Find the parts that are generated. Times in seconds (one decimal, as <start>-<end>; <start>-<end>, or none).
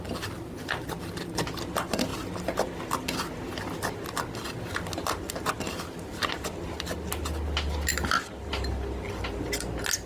none